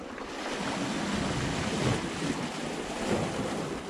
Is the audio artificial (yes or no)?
no